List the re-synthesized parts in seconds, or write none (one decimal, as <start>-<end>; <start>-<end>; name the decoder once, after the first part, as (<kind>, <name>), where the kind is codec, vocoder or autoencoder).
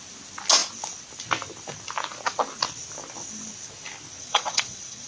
4.2-5.1 (vocoder, WaveNeXt)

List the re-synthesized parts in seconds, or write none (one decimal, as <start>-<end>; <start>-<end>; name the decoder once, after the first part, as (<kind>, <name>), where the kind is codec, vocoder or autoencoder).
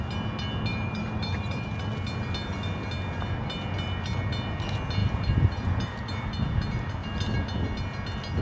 0.7-1.9 (vocoder, BigVGAN v2); 5.0-6.1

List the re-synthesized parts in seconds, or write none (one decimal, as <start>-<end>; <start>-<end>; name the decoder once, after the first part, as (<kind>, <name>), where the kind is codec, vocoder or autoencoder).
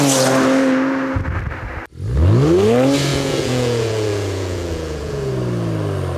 3.1-5.3 (vocoder, Vocos)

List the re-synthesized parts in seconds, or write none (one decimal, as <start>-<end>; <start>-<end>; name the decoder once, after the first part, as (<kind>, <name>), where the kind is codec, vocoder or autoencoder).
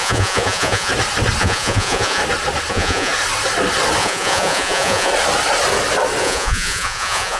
0.0-0.9 (vocoder, Vocos); 1.4-2.2; 2.7-3.1; 4.0-5.1; 6.2-7.4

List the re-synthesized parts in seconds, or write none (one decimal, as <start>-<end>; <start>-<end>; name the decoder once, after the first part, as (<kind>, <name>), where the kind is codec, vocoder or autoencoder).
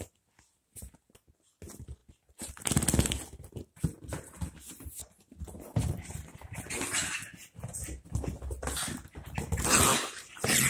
none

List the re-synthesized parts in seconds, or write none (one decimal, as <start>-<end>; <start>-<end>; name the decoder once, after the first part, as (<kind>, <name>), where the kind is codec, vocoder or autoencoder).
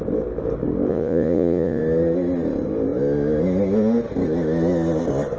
0.9-1.8 (vocoder, Vocos)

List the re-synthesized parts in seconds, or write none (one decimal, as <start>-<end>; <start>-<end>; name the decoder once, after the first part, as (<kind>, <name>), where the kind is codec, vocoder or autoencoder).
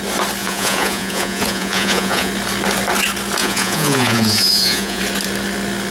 0.4-2.3 (vocoder, Vocos); 3.4-5.0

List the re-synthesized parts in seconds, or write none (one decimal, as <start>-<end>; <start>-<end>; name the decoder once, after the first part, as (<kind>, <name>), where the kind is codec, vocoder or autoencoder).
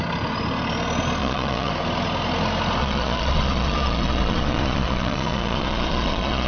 1.2-1.7 (vocoder, Vocos); 2.8-6.5